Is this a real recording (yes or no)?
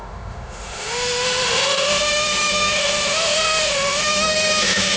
no